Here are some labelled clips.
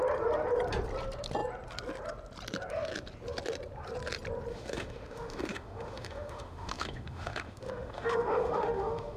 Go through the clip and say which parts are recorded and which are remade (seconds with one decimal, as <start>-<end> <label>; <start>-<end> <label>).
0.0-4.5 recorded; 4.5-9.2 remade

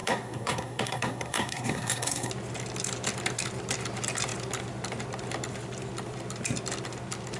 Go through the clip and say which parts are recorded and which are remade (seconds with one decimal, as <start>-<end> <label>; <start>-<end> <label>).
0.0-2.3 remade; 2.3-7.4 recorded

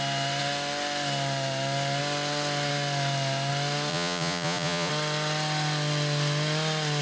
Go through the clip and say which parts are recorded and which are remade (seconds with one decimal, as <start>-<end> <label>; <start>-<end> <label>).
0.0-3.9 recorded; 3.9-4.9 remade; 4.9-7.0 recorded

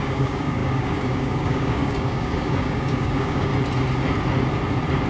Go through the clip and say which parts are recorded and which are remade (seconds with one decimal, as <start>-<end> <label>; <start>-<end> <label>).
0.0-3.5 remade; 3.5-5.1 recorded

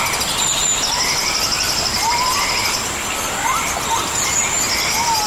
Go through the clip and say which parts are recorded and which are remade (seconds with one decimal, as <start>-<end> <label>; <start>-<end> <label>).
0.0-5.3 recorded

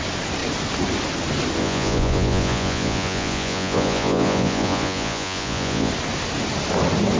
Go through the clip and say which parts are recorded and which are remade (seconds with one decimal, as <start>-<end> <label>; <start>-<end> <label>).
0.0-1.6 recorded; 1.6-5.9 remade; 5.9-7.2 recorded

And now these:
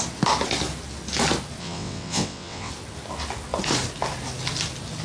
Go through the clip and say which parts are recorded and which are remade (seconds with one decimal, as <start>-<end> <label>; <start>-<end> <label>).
0.0-1.6 recorded; 1.6-2.7 remade; 2.7-5.0 recorded

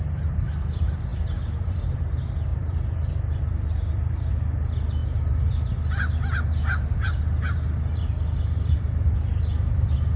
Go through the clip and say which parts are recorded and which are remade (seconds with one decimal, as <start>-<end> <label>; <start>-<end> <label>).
0.0-2.5 recorded; 2.5-3.2 remade; 3.2-10.2 recorded